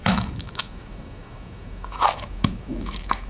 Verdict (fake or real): fake